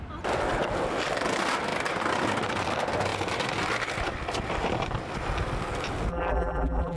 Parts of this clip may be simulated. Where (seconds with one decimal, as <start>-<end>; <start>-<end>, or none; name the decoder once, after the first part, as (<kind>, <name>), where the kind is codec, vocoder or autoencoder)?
6.1-7.0 (vocoder, BigVGAN v2)